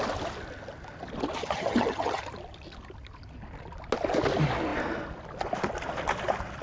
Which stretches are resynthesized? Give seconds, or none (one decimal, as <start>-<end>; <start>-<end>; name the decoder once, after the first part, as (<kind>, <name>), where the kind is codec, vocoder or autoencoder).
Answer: 1.4-2.2 (vocoder, HiFi-GAN)